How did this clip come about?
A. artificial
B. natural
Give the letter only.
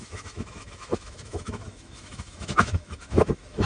A